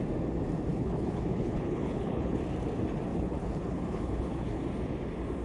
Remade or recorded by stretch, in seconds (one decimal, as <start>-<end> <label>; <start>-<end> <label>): 0.0-0.7 recorded; 0.7-2.4 remade; 2.4-3.1 recorded; 3.1-4.6 remade; 4.6-5.4 recorded